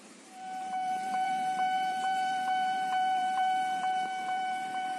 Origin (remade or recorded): remade